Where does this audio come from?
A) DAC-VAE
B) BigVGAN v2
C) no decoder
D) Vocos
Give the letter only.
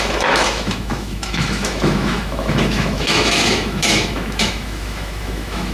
A